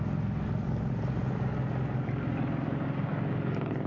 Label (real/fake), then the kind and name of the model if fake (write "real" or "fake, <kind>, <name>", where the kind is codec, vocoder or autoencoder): real